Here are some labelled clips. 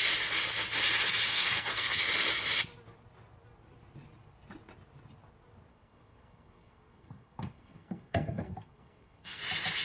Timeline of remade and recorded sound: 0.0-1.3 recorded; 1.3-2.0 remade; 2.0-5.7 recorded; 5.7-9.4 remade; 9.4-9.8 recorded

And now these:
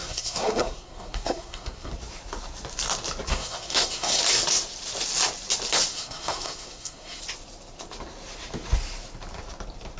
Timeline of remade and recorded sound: 0.0-1.9 remade; 1.9-3.3 recorded; 3.3-4.2 remade; 4.2-5.9 recorded; 5.9-7.2 remade; 7.2-10.0 recorded

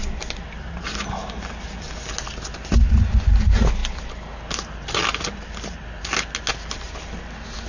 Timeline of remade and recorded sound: 0.0-7.7 recorded

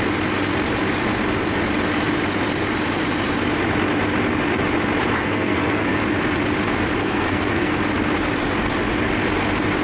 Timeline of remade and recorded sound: 0.0-5.2 recorded; 5.2-6.0 remade; 6.0-7.0 recorded; 7.0-7.7 remade; 7.7-9.8 recorded

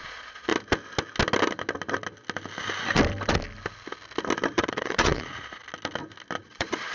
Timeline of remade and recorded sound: 0.0-0.5 remade; 0.5-4.6 recorded; 4.6-5.6 remade; 5.6-6.4 recorded; 6.4-6.9 remade